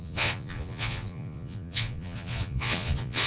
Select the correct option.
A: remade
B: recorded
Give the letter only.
A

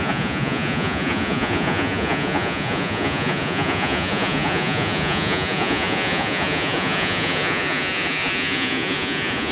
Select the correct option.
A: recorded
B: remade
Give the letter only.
B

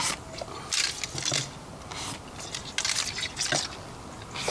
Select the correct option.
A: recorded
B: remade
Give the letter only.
A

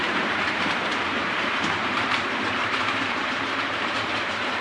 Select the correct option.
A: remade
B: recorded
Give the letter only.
A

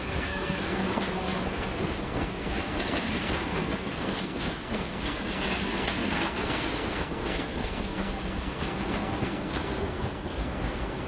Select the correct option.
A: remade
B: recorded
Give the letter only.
A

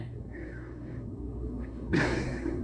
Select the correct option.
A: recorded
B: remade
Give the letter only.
B